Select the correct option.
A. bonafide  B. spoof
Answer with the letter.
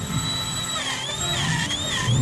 A